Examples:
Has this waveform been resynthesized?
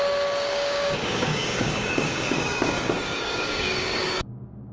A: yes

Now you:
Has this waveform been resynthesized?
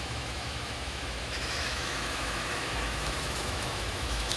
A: yes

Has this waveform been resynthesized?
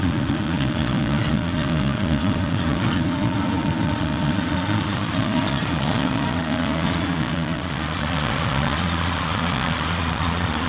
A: yes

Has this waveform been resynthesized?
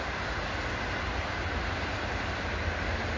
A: no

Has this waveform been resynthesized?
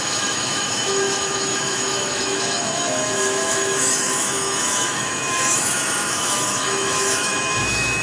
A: yes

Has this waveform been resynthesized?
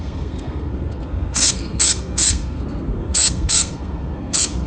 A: yes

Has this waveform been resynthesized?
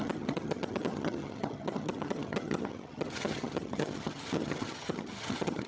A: yes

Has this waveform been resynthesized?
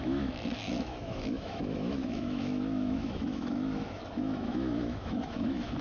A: yes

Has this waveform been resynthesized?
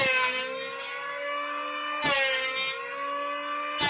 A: no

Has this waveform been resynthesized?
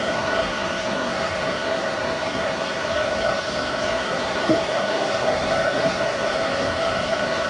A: yes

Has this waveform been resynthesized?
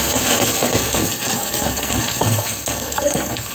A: yes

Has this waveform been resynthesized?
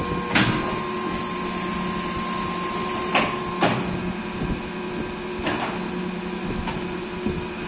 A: no